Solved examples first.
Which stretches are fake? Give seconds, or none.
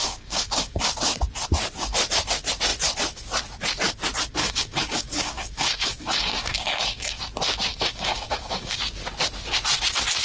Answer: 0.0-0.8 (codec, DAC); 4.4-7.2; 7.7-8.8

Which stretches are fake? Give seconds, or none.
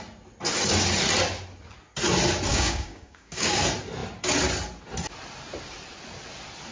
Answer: 2.5-3.6 (codec, DAC)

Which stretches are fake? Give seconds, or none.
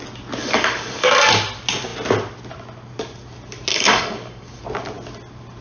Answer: 0.4-1.3 (codec, DAC); 3.7-4.6